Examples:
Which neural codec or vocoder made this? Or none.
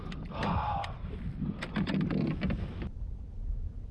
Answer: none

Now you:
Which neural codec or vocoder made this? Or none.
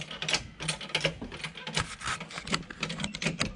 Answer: none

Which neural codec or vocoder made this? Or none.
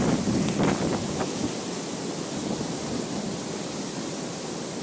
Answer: vocoder, BigVGAN v2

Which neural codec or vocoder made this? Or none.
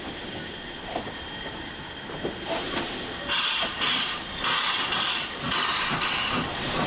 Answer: none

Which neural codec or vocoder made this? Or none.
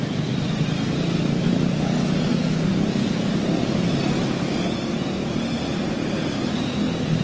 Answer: none